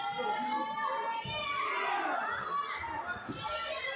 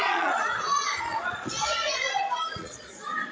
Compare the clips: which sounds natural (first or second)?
first